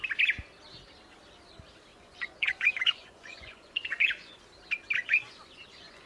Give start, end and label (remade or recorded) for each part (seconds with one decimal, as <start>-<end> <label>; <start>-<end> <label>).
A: 0.0-1.9 recorded; 1.9-4.4 remade; 4.4-5.0 recorded; 5.0-6.1 remade